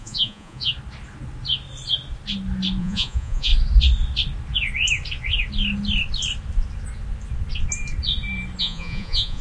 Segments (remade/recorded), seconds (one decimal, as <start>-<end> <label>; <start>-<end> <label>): 0.0-0.7 remade; 0.7-2.8 recorded; 2.8-3.5 remade; 3.5-8.6 recorded; 8.6-9.4 remade